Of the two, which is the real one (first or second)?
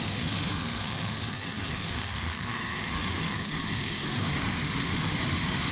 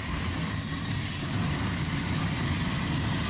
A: second